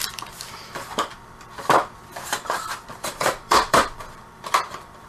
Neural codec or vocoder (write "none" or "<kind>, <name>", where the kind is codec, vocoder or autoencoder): vocoder, BigVGAN v2